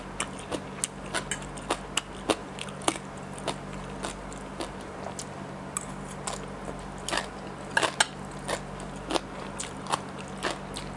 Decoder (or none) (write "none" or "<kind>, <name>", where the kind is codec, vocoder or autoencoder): none